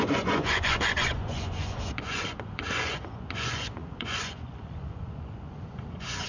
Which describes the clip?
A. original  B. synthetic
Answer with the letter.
B